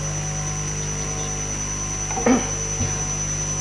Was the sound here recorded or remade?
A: recorded